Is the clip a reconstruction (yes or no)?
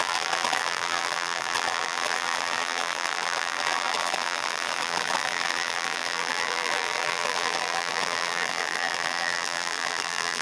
yes